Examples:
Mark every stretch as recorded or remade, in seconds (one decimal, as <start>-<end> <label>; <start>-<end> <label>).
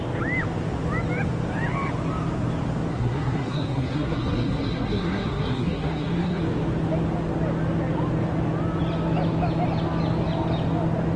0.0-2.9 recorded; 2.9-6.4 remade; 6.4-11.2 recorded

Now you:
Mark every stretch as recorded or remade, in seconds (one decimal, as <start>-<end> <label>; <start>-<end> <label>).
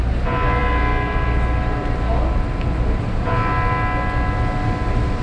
0.0-5.2 recorded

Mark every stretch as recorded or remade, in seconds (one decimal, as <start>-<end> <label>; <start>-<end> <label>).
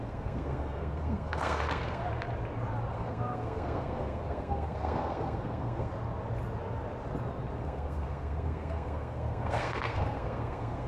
0.0-2.0 remade; 2.0-2.9 recorded; 2.9-5.9 remade; 5.9-7.6 recorded; 7.6-10.9 remade